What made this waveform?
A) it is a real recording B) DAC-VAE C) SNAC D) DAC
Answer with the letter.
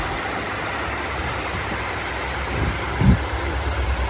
A